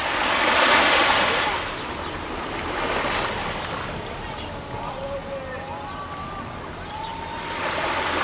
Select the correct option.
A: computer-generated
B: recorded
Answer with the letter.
B